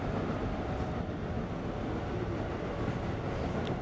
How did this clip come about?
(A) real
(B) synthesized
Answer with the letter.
B